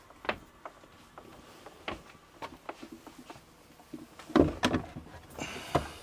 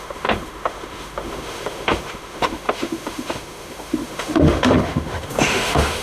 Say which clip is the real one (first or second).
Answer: first